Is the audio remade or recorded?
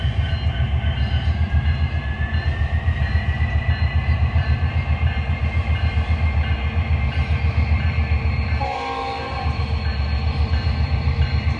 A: remade